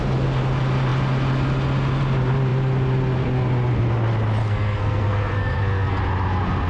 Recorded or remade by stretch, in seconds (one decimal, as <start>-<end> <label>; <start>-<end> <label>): 0.0-4.4 recorded; 4.4-6.0 remade; 6.0-6.7 recorded